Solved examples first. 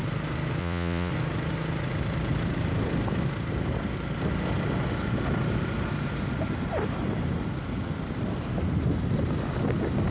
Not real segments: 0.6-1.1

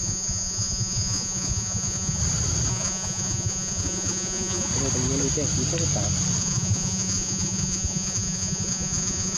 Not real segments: 0.0-2.2; 2.7-4.7; 6.4-9.4

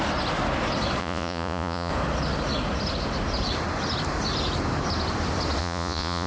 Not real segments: 1.0-1.9; 5.6-6.3